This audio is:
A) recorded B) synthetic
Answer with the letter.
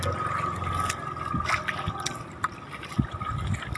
A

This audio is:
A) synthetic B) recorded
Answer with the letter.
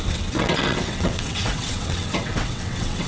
A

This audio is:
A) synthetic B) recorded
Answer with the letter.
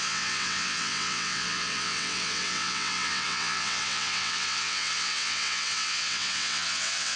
A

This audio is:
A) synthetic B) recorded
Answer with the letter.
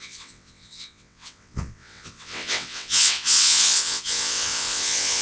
A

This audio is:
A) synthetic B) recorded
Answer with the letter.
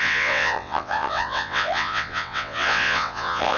A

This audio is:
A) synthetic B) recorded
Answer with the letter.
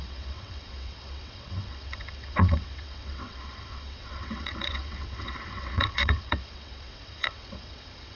A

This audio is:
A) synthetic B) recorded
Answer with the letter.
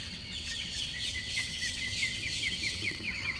A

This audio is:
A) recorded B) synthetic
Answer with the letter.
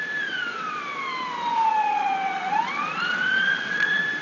B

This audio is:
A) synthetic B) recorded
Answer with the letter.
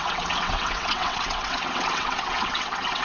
A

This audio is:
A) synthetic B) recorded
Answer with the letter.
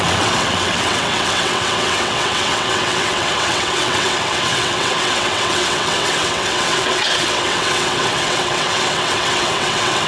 A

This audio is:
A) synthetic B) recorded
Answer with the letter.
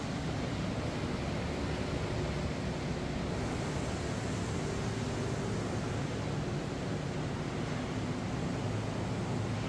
B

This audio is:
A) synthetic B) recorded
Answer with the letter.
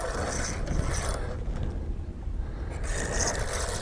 B